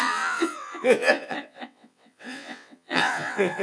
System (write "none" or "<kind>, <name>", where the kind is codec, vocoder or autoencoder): vocoder, WaveNeXt